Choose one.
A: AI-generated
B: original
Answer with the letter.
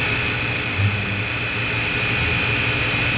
B